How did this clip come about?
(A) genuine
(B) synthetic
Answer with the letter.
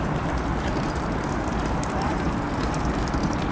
B